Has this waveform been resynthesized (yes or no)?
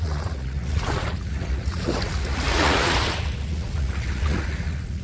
yes